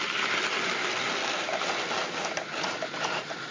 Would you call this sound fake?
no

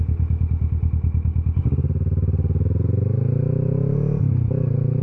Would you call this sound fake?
no